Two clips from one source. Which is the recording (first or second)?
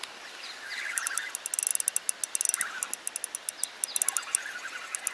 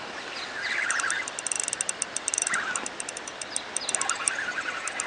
first